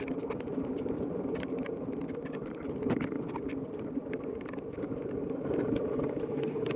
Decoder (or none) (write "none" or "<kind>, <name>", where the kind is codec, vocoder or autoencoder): none